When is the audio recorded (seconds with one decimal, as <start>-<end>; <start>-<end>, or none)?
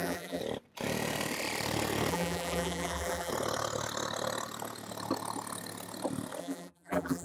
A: 0.4-2.1; 3.3-6.4